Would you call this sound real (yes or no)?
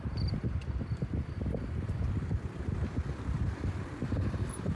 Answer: no